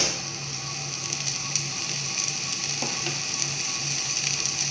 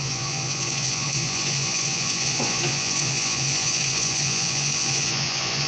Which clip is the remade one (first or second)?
second